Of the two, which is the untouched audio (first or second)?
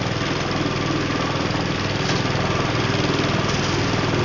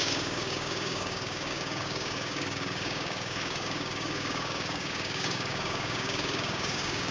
first